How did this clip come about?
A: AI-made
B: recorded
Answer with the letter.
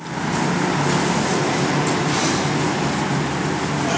B